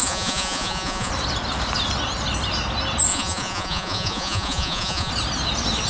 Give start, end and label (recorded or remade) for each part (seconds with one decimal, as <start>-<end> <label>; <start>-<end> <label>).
0.0-1.1 remade; 1.1-3.1 recorded; 3.1-5.1 remade; 5.1-5.9 recorded